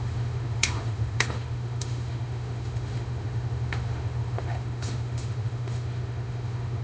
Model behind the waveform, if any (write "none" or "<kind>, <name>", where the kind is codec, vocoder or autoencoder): autoencoder, DAC-VAE